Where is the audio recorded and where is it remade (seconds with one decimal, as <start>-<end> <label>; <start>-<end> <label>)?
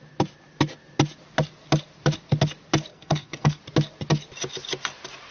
0.0-2.9 recorded; 2.9-3.6 remade; 3.6-5.3 recorded